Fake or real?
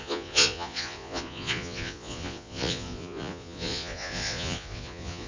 fake